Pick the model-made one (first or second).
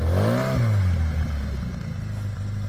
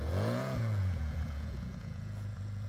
second